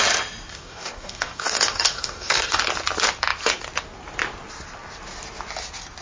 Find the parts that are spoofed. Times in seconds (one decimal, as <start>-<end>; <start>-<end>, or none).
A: 0.5-2.6